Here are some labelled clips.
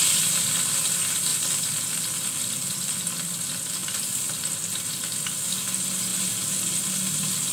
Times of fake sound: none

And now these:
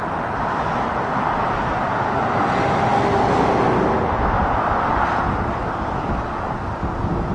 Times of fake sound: none

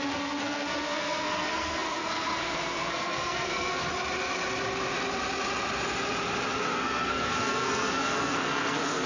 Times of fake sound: 0.0-3.8; 6.6-9.1

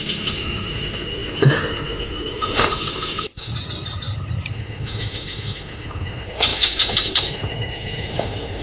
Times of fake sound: 0.0-3.5; 4.5-8.6

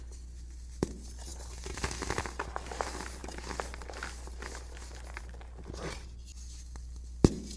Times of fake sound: none

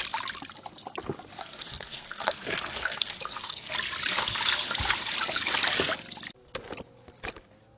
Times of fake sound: 1.4-3.7

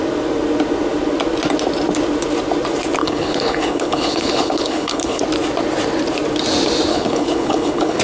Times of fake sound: 3.0-5.2; 6.9-8.0

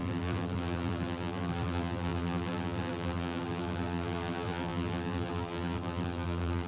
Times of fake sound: 0.0-6.7